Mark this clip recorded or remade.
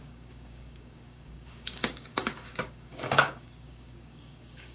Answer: remade